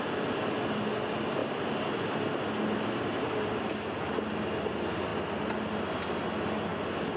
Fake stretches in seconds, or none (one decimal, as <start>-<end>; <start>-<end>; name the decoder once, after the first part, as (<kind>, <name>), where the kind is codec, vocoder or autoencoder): none